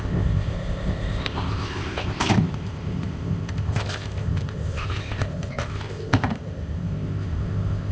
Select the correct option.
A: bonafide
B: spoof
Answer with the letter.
B